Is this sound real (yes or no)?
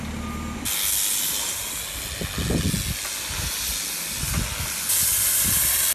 yes